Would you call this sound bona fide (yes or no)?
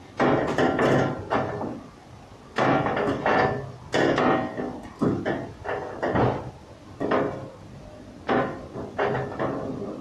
yes